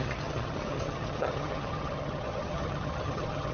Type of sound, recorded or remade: remade